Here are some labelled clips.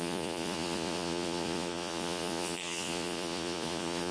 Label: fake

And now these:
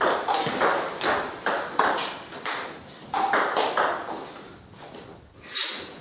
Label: real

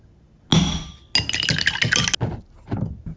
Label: real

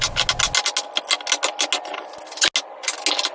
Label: real